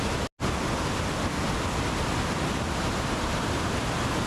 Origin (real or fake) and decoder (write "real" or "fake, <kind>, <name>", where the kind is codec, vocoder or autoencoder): real